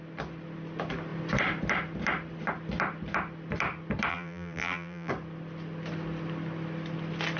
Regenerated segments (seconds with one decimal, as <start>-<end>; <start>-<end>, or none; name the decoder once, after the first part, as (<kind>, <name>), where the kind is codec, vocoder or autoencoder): 4.1-5.1 (vocoder, BigVGAN v2)